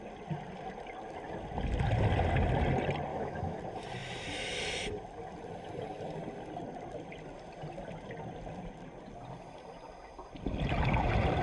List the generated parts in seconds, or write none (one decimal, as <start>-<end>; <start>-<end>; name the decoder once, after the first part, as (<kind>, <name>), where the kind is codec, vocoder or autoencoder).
3.1-3.6 (autoencoder, DAC-VAE)